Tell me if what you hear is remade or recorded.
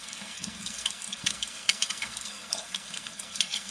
remade